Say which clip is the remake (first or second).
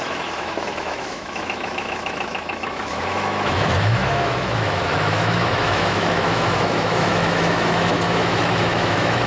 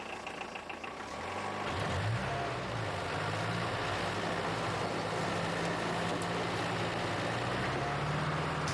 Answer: first